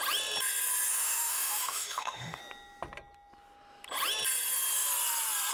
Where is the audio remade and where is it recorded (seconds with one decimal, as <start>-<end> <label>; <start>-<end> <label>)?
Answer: 0.0-0.9 recorded; 0.9-2.4 remade; 2.4-5.5 recorded